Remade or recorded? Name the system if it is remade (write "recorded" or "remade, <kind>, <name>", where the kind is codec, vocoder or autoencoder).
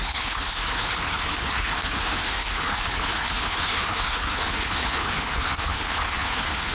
remade, codec, HILCodec